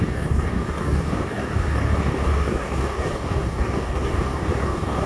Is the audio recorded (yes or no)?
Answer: no